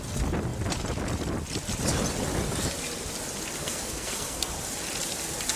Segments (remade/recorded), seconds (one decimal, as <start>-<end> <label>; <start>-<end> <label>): 0.0-3.6 recorded; 3.6-4.5 remade; 4.5-5.6 recorded